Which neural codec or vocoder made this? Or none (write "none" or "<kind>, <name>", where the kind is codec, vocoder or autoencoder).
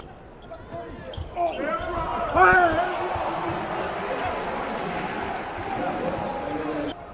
none